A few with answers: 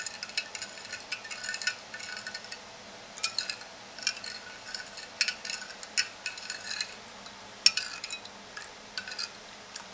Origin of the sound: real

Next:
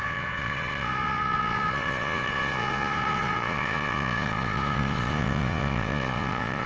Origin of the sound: fake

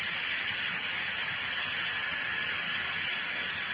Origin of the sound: real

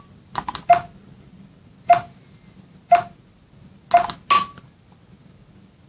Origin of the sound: real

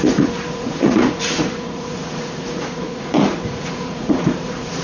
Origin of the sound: fake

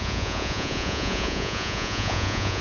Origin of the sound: fake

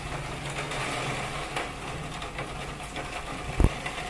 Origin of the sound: real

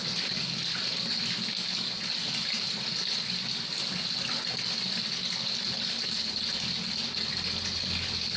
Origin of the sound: real